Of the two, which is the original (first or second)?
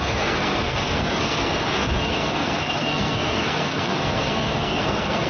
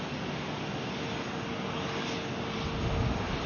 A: second